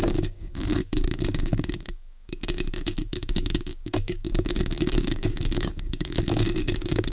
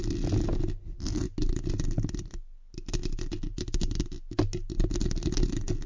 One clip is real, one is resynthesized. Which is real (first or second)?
second